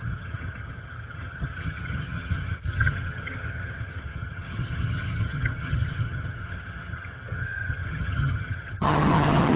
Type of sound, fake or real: fake